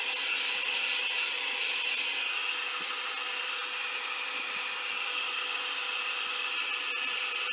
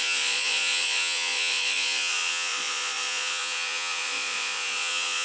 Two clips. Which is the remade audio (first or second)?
second